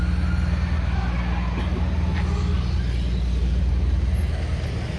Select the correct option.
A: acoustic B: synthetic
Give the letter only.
A